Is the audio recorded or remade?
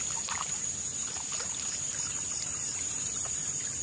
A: remade